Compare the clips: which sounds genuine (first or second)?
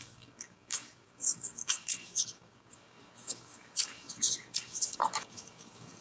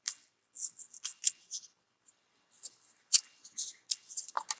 second